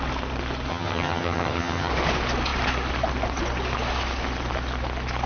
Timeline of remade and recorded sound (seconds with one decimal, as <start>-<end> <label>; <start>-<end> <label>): 0.0-0.7 recorded; 0.7-1.9 remade; 1.9-5.3 recorded